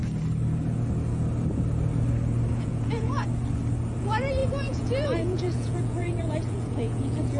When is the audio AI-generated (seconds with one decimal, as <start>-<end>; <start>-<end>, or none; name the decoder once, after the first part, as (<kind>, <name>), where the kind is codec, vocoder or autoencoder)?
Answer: 2.5-3.2 (vocoder, Vocos); 4.0-7.4